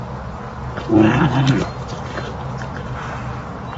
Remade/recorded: recorded